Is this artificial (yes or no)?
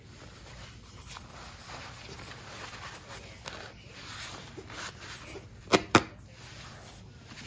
no